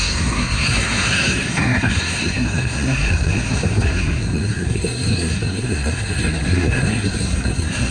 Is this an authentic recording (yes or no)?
no